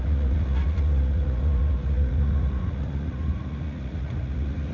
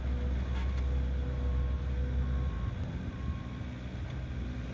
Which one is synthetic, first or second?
first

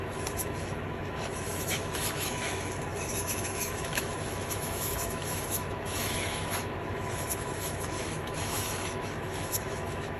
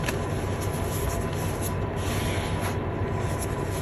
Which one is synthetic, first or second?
first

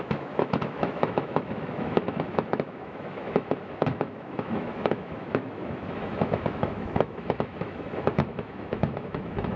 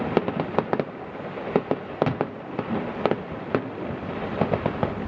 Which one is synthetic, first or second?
first